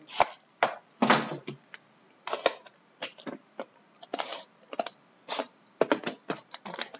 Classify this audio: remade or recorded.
remade